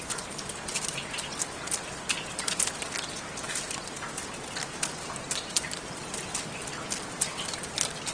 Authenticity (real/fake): real